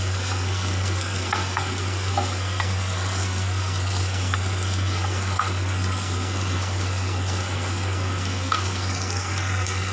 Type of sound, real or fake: fake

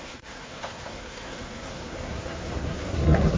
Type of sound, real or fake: fake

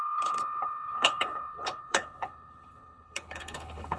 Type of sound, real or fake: fake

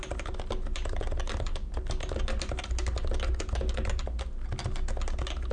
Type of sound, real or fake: real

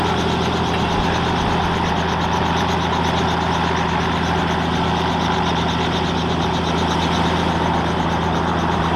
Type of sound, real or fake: real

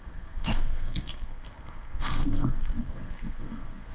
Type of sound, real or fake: fake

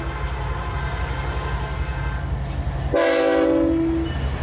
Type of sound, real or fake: real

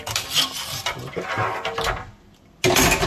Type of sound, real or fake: real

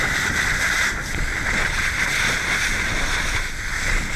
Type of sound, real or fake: real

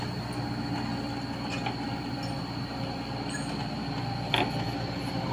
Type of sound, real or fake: real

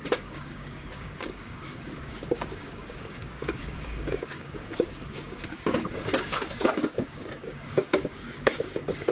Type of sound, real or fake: fake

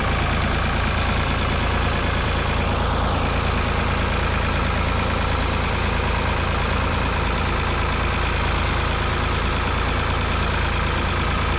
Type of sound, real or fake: real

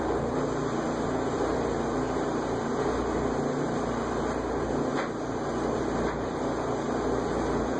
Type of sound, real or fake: real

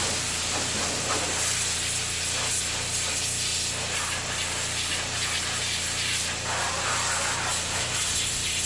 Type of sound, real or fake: real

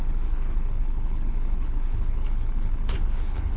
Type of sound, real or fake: fake